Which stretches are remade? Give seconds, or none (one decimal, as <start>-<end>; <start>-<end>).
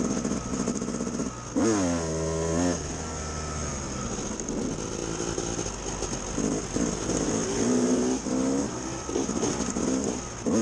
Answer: none